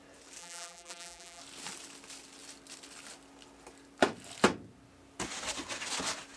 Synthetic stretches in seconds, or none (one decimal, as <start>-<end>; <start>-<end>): 0.4-1.4